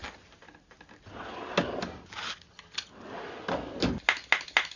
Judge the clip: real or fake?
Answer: real